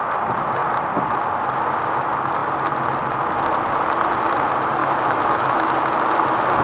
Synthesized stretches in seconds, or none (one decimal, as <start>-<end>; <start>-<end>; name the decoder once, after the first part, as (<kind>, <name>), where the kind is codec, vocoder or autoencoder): 4.8-5.7 (autoencoder, DAC-VAE)